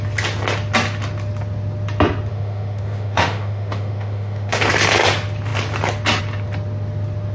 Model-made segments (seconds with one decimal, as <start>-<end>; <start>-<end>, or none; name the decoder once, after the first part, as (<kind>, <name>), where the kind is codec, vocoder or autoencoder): 2.3-4.7 (autoencoder, DAC-VAE)